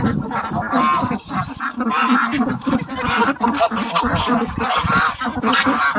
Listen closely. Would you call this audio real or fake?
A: real